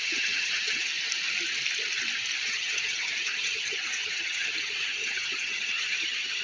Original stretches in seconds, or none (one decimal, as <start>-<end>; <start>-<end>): 0.9-2.4